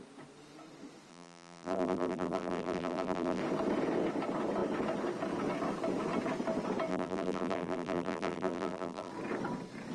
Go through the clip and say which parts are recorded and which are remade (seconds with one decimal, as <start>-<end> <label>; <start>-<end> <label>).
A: 0.0-1.1 recorded; 1.1-3.4 remade; 3.4-6.9 recorded; 6.9-9.1 remade; 9.1-9.9 recorded